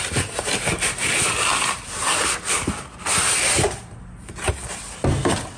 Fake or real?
real